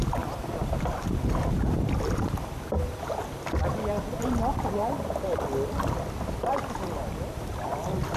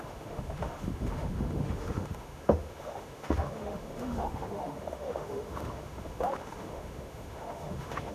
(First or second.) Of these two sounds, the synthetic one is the second